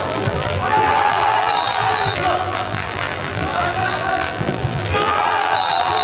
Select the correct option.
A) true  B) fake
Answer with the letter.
B